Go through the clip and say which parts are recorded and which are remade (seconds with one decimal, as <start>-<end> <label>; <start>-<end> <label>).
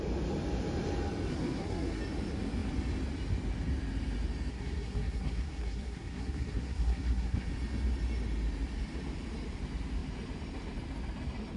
0.0-1.3 recorded; 1.3-2.0 remade; 2.0-4.5 recorded; 4.5-7.5 remade; 7.5-11.6 recorded